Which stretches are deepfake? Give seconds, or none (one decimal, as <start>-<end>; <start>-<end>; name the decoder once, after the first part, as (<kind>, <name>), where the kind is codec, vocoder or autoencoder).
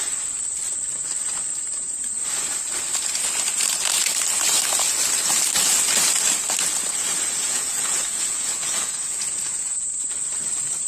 7.4-9.9 (vocoder, Vocos)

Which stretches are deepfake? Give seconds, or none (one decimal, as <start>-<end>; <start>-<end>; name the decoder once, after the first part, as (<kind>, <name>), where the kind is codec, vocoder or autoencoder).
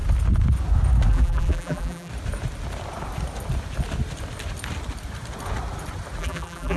1.1-2.1 (vocoder, BigVGAN v2); 6.2-6.8